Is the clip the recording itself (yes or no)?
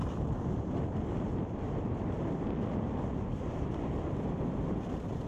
yes